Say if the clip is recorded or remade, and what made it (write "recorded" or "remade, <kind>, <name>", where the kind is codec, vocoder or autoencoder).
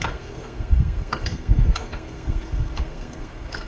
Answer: remade, codec, SNAC